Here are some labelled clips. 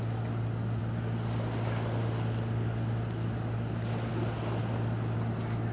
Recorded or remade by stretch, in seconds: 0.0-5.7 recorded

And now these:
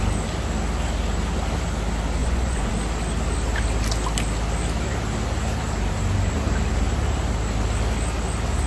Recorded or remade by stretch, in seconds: 0.0-2.2 recorded; 2.2-2.7 remade; 2.7-8.7 recorded

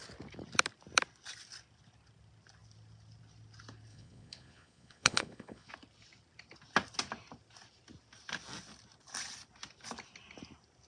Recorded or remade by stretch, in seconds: 0.0-3.9 recorded; 3.9-5.7 remade; 5.7-10.9 recorded

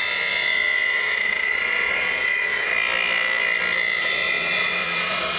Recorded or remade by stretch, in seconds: 0.0-2.7 remade; 2.7-4.0 recorded; 4.0-5.4 remade